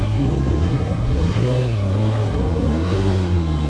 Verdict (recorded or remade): remade